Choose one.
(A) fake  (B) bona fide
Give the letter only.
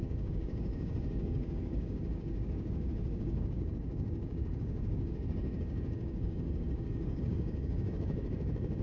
A